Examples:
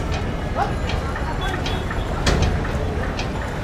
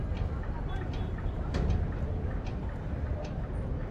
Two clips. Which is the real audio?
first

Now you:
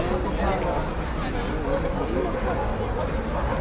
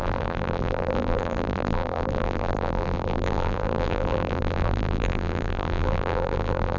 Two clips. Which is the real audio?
first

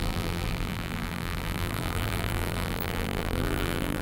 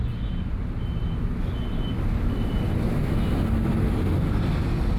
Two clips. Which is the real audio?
second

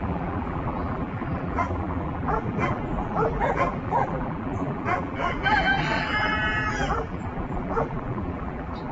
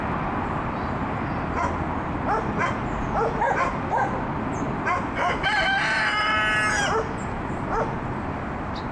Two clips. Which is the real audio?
second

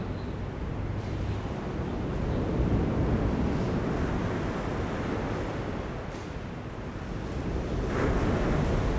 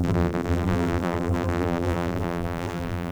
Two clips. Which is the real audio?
first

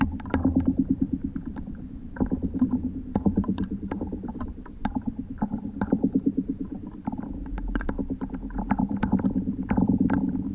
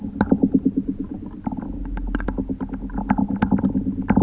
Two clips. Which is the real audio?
second